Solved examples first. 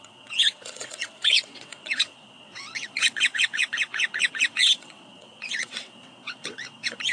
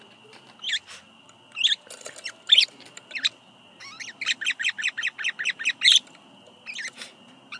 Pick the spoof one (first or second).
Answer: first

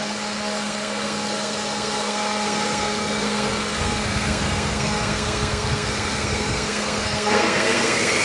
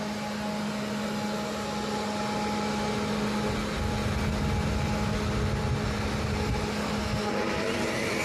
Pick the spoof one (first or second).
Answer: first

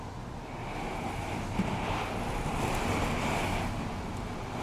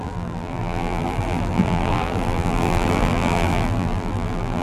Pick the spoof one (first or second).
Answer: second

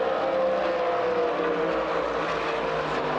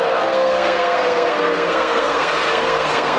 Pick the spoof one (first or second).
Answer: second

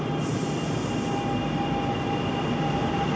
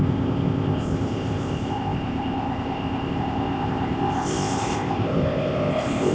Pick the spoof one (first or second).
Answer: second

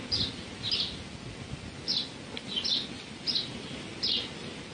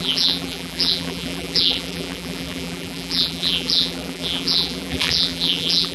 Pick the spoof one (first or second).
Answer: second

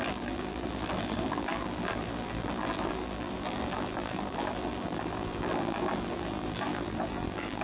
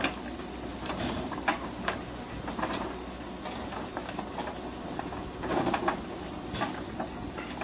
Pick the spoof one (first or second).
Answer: first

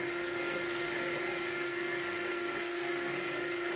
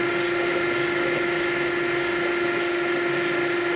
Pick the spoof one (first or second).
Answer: first